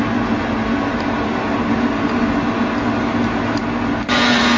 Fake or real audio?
real